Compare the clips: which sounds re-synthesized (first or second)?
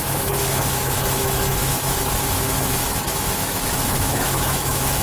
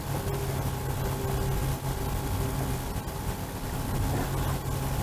first